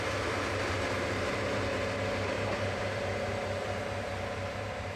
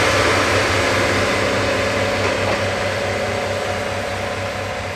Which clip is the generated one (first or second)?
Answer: first